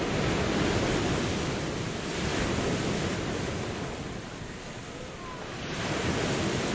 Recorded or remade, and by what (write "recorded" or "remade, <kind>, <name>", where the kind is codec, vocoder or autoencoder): recorded